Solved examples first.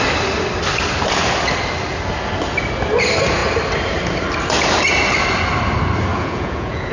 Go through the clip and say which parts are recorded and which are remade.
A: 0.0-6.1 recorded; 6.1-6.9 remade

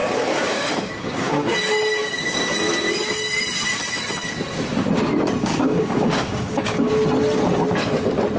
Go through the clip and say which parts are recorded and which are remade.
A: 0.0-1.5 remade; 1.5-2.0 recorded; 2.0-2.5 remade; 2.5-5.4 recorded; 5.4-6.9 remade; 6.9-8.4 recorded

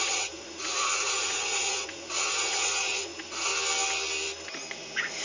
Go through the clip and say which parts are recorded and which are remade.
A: 0.0-3.5 remade; 3.5-4.7 recorded; 4.7-5.2 remade